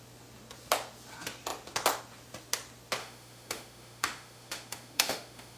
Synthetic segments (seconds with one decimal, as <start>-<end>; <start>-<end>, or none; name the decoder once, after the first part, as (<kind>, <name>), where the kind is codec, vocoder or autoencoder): 3.0-5.6 (autoencoder, DAC-VAE)